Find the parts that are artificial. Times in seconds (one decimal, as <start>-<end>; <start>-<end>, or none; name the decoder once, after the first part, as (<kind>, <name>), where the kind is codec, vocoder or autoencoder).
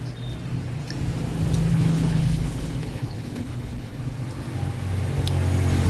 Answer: 1.7-4.0 (codec, HILCodec)